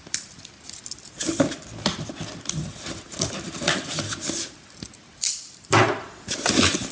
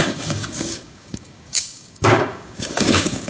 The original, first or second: first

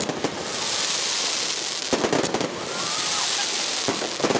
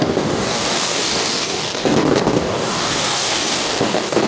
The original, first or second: first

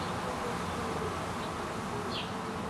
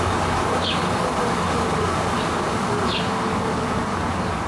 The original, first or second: first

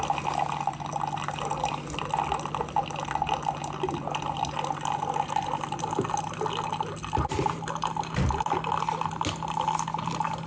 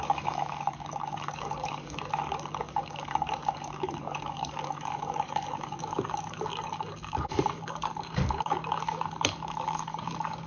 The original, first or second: first